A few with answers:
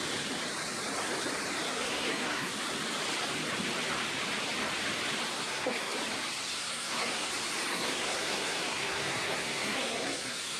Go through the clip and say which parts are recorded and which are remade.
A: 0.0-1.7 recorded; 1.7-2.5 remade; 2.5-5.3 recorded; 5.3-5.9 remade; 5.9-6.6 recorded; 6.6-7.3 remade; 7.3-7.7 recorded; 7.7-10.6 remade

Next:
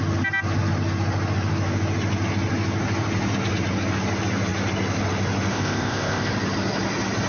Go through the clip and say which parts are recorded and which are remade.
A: 0.0-5.5 recorded; 5.5-6.3 remade; 6.3-7.3 recorded

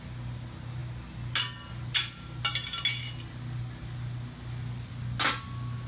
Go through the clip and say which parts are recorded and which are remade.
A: 0.0-5.9 recorded

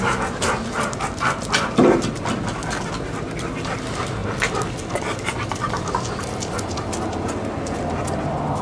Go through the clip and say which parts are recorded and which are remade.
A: 0.0-8.6 recorded

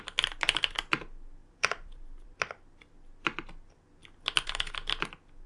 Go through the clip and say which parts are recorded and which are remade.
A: 0.0-1.4 recorded; 1.4-3.1 remade; 3.1-5.5 recorded

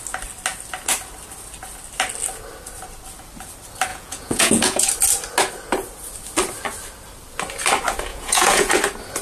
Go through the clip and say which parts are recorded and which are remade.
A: 0.0-3.9 recorded; 3.9-4.9 remade; 4.9-8.1 recorded; 8.1-8.7 remade; 8.7-9.2 recorded

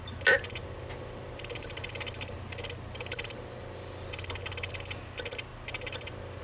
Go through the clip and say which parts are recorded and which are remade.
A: 0.0-6.4 recorded